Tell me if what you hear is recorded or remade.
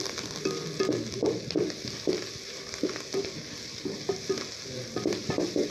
recorded